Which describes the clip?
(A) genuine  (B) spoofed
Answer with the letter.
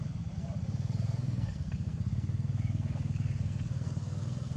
B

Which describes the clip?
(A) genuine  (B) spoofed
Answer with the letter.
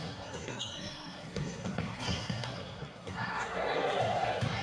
B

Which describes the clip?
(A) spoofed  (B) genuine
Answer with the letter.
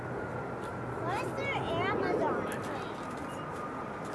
B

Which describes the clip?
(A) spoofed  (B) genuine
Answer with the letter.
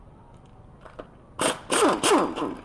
B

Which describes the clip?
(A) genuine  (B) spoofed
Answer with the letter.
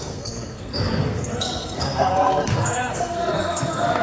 B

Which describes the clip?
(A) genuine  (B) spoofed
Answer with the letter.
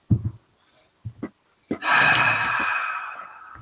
A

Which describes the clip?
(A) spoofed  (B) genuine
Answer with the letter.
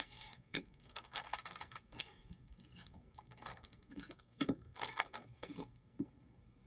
A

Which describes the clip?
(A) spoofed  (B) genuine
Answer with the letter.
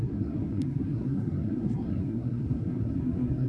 A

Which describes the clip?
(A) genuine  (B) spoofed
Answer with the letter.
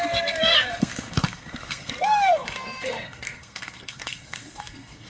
B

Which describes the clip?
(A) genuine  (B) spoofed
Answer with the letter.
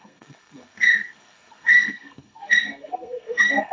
B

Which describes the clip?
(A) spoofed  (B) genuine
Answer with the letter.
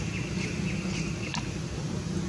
B